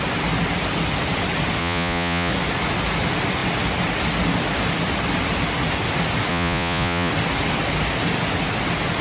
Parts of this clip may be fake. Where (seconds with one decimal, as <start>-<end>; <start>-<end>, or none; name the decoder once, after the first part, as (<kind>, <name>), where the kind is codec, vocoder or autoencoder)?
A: 1.6-2.3 (vocoder, Vocos); 6.3-7.1